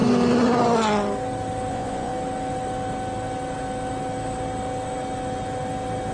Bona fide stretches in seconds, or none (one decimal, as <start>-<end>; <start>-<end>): 0.0-1.7; 2.1-6.1